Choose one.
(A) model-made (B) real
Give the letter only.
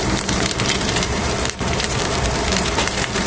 A